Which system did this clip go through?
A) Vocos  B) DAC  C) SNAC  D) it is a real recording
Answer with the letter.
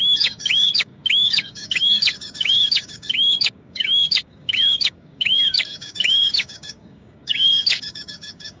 B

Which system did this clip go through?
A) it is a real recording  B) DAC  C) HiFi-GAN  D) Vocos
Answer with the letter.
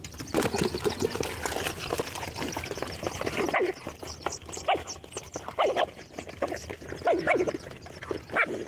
A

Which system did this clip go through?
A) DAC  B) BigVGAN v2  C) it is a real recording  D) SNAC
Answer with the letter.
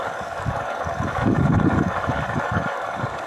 A